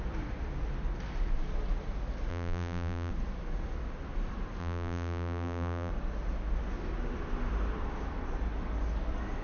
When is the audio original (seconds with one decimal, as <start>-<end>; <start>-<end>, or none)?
0.0-2.3; 3.1-4.6; 5.9-9.4